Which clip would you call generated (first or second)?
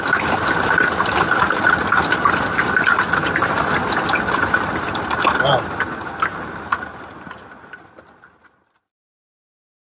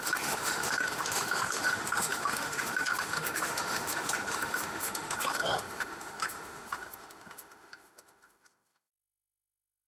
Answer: second